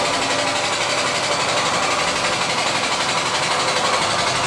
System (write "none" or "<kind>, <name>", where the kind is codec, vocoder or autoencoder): none